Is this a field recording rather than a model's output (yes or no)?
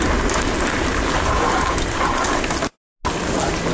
yes